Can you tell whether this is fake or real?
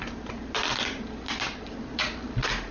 real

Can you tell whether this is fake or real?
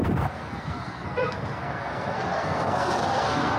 fake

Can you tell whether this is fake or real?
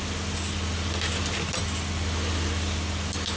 real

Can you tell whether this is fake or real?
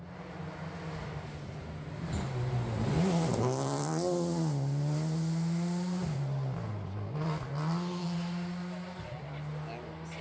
real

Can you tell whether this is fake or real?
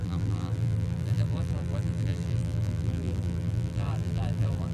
fake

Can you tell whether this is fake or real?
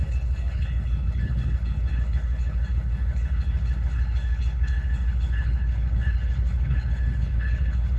fake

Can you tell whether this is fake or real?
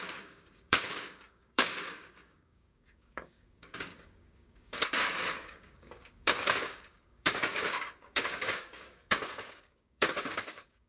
fake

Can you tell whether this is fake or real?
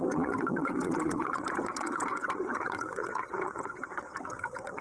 fake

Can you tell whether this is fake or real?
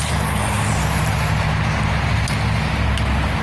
real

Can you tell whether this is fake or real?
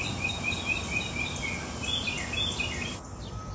real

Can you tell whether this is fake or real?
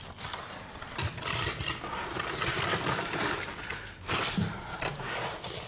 real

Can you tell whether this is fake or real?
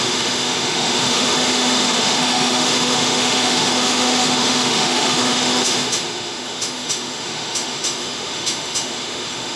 fake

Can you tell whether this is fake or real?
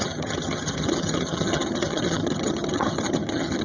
fake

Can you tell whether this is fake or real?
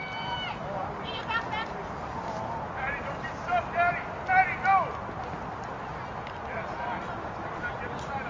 real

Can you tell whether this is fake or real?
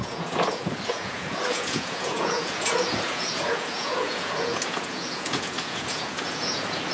fake